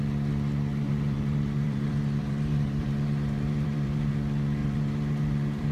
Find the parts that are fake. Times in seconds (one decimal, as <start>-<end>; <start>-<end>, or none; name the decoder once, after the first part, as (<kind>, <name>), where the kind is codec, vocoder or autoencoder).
0.7-4.1 (vocoder, BigVGAN v2); 4.6-5.7